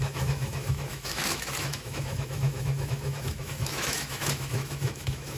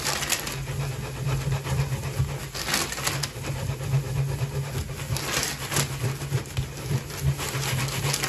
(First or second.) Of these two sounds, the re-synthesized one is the first